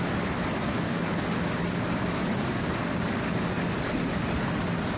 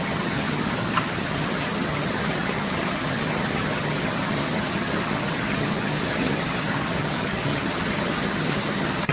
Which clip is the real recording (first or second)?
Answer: first